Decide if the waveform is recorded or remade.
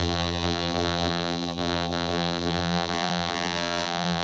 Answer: remade